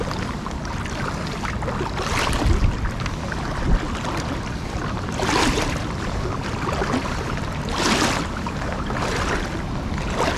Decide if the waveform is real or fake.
real